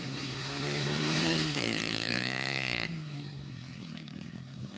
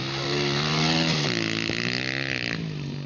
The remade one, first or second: first